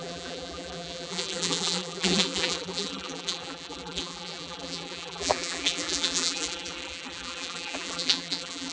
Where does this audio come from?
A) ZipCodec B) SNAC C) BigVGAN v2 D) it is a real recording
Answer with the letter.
C